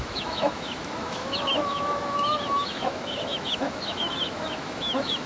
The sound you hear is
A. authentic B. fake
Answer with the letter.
B